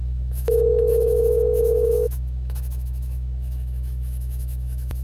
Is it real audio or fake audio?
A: fake